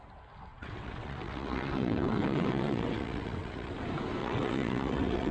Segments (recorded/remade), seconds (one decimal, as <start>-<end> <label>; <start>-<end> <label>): 0.0-0.5 recorded; 0.5-3.7 remade; 3.7-4.2 recorded; 4.2-5.3 remade